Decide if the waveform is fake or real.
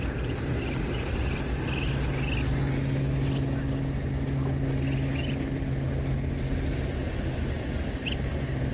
real